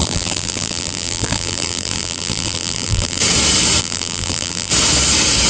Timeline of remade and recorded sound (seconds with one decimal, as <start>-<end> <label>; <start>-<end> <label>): 0.0-3.2 remade; 3.2-3.8 recorded; 3.8-4.7 remade; 4.7-5.5 recorded